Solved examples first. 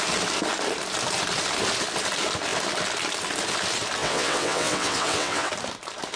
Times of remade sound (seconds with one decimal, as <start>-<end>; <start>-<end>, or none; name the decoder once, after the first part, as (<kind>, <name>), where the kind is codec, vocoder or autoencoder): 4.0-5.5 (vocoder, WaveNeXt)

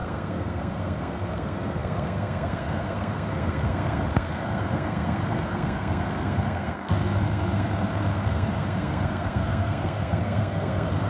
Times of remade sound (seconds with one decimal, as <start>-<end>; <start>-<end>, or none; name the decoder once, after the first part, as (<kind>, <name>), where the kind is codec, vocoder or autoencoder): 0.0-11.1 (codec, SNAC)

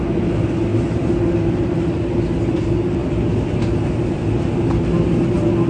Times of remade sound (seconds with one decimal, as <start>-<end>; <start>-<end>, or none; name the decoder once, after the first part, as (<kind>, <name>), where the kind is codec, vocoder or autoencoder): none

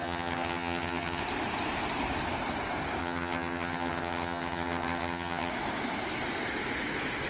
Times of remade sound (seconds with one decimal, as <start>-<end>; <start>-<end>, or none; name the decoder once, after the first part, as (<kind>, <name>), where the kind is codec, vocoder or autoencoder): 0.0-1.2 (vocoder, HiFi-GAN); 3.0-5.5

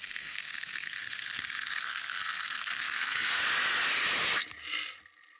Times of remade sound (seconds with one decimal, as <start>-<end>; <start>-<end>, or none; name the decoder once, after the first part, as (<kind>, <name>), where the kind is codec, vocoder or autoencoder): 0.0-3.4 (codec, SNAC)

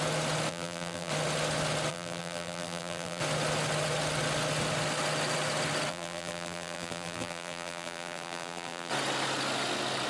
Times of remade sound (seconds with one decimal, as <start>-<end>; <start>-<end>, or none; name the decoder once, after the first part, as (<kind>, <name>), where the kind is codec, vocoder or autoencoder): 0.5-1.1 (vocoder, BigVGAN v2); 1.9-3.2; 5.9-8.9

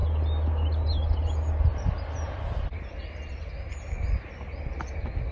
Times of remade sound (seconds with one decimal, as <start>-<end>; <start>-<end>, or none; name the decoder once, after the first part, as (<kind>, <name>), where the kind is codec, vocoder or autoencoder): none